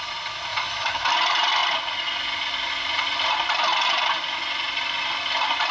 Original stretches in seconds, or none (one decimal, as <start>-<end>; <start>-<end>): 0.0-0.5; 1.1-5.7